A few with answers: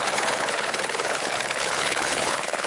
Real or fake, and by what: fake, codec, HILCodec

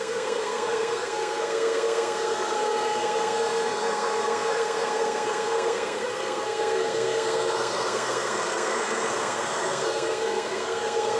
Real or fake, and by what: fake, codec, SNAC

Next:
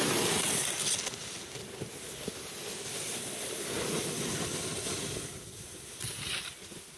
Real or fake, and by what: real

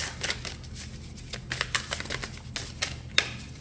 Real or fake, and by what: real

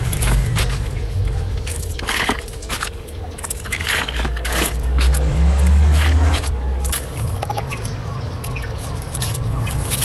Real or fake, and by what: fake, codec, DAC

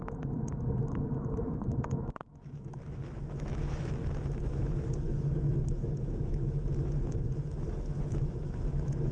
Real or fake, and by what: fake, autoencoder, DAC-VAE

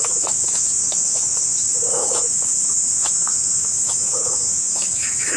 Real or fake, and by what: fake, autoencoder, DAC-VAE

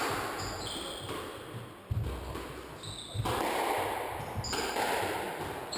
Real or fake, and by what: real